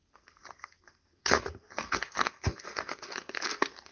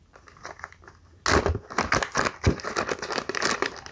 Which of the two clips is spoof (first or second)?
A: first